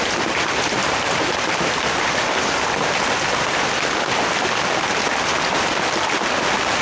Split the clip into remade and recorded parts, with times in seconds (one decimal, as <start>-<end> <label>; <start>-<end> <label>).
0.0-0.8 recorded; 0.8-2.1 remade; 2.1-6.8 recorded